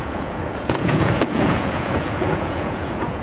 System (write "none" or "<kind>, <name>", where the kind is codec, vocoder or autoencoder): vocoder, Vocos